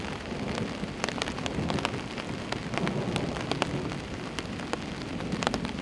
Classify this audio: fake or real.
real